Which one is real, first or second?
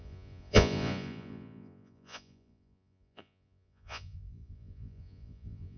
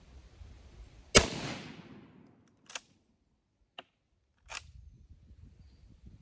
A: second